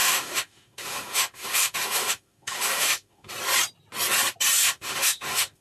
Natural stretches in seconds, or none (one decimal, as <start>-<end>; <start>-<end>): 3.3-4.6